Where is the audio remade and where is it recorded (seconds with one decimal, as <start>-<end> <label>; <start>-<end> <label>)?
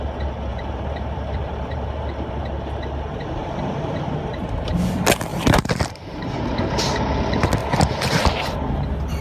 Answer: 0.0-0.5 recorded; 0.5-2.4 remade; 2.4-3.4 recorded; 3.4-4.7 remade; 4.7-5.3 recorded; 5.3-6.3 remade; 6.3-7.6 recorded; 7.6-8.2 remade; 8.2-9.2 recorded